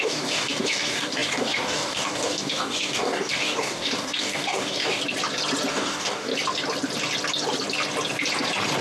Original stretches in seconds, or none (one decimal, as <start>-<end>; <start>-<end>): 5.0-5.7; 6.3-8.8